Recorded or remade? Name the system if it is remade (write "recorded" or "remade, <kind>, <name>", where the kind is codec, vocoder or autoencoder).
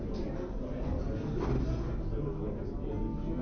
recorded